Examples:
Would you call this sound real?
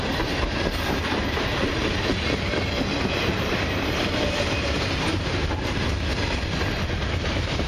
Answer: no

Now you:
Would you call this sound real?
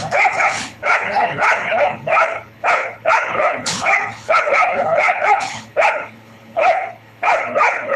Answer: no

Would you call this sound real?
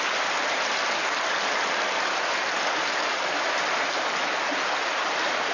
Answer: yes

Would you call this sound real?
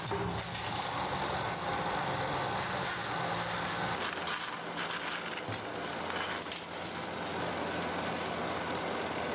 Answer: yes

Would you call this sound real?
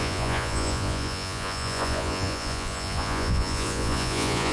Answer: no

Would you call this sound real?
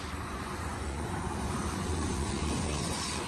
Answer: no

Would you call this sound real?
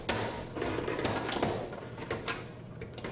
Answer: yes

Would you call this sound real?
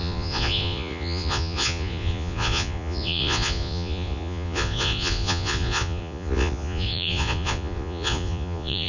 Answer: no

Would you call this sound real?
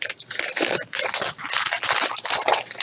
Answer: yes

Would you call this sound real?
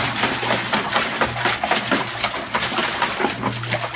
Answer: yes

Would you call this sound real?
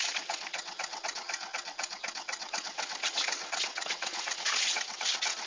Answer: no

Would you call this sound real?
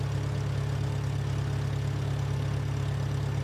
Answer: yes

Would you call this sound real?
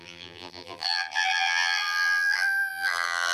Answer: no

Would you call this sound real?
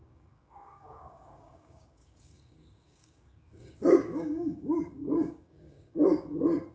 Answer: no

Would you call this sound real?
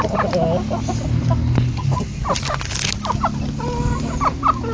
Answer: yes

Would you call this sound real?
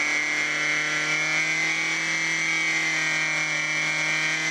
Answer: yes